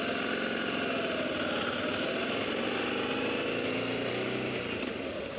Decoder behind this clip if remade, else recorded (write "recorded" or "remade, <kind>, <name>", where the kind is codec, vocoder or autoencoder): recorded